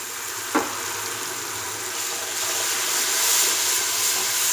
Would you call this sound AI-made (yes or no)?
no